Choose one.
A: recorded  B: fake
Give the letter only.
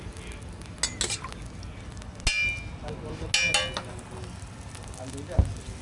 A